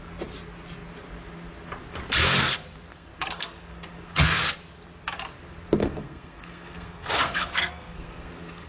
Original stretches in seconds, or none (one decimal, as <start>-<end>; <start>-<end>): 0.0-2.9; 4.4-5.8